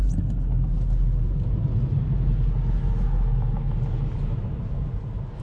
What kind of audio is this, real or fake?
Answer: real